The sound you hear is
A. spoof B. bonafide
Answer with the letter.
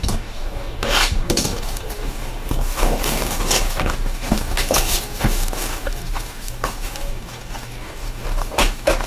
A